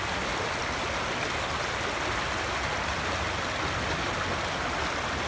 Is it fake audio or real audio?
real